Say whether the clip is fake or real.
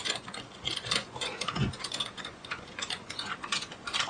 fake